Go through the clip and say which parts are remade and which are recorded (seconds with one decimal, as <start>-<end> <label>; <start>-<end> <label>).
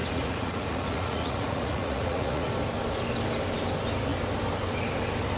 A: 0.0-2.5 remade; 2.5-5.4 recorded